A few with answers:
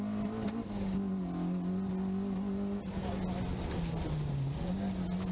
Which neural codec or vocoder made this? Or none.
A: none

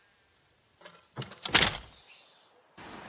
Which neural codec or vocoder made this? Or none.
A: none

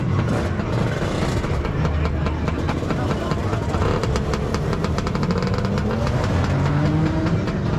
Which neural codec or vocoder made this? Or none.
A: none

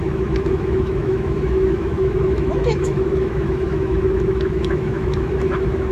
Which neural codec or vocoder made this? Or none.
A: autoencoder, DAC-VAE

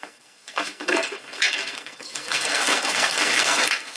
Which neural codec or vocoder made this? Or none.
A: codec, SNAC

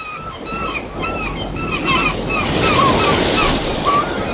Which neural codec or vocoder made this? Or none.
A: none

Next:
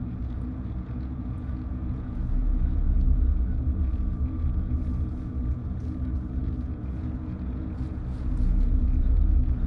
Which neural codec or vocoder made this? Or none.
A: vocoder, Vocos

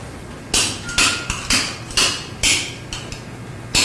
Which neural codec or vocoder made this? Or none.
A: none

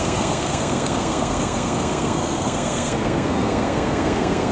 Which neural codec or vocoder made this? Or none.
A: codec, SNAC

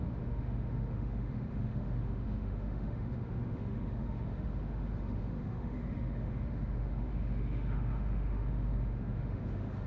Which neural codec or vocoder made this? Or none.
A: autoencoder, DAC-VAE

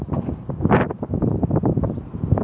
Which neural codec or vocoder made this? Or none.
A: none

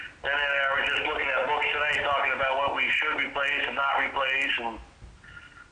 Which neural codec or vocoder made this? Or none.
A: none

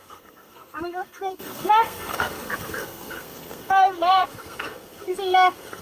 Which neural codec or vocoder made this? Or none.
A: codec, SNAC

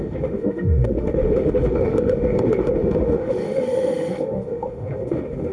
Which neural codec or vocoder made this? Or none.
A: autoencoder, DAC-VAE